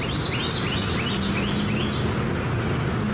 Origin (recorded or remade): recorded